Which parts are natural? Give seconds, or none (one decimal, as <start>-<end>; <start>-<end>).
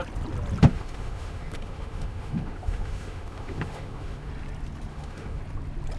0.0-0.7; 4.3-4.9; 5.4-6.0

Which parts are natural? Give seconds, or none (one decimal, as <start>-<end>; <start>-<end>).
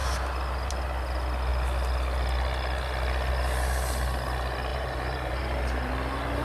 0.0-4.7; 5.9-6.4